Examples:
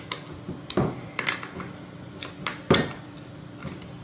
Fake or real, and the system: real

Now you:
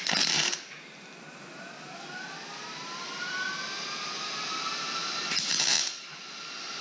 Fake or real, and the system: real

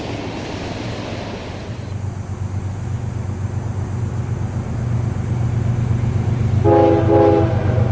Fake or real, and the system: real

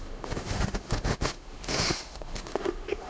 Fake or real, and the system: fake, autoencoder, DAC-VAE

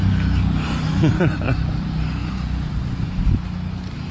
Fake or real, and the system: real